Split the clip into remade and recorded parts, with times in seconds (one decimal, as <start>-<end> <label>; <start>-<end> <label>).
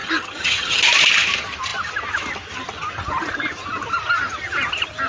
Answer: 0.0-0.8 remade; 0.8-5.1 recorded